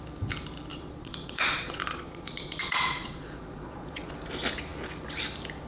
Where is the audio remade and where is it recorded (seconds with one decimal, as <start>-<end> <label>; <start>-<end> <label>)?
0.0-0.7 recorded; 0.7-4.1 remade; 4.1-5.7 recorded